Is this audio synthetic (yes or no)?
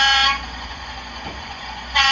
yes